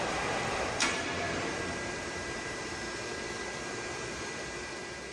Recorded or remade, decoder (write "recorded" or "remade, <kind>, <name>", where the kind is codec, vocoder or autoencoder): remade, vocoder, BigVGAN v2